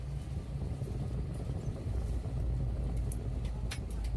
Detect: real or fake real